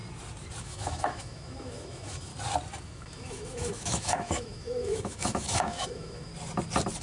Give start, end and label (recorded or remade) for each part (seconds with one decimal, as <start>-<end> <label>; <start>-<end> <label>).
0.0-0.6 recorded; 0.6-2.3 remade; 2.3-2.8 recorded; 2.8-6.3 remade; 6.3-7.0 recorded